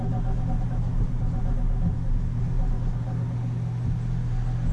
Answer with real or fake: real